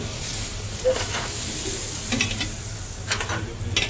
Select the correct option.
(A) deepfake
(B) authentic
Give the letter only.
B